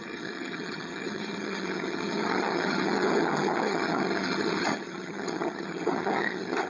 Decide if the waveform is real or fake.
fake